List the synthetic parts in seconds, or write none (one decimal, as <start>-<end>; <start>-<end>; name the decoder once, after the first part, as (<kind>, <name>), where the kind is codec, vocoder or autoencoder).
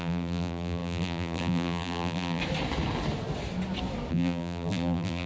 0.0-2.4 (vocoder, BigVGAN v2); 4.1-5.3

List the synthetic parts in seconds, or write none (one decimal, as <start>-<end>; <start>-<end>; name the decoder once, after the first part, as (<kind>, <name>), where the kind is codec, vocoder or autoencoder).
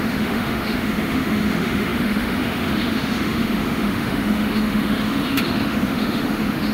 0.0-6.7 (autoencoder, DAC-VAE)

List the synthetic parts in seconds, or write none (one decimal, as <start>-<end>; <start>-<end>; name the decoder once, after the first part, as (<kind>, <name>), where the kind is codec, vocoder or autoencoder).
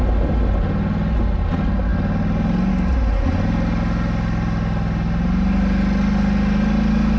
none